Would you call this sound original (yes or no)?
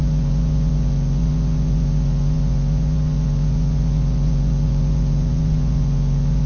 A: no